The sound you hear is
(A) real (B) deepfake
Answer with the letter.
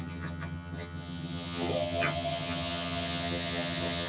B